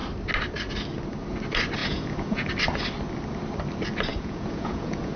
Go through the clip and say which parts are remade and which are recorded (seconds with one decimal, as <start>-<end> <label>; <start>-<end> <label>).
0.0-1.8 recorded; 1.8-2.5 remade; 2.5-4.1 recorded; 4.1-5.2 remade